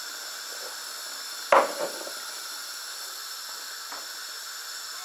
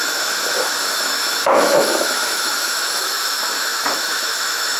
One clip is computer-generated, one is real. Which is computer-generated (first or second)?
second